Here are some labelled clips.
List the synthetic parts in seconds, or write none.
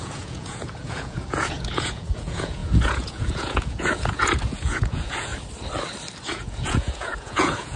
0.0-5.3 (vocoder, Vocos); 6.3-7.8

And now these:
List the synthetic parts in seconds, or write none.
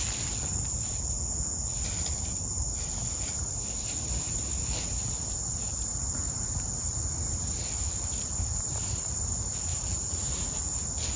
9.7-10.5 (vocoder, Vocos)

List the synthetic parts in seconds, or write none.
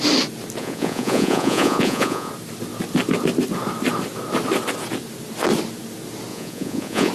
0.6-2.3 (vocoder, Vocos); 6.3-7.1